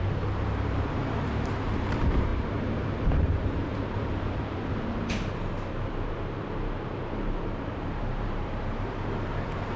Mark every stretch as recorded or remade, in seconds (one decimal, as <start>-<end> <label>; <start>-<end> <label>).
0.0-9.8 remade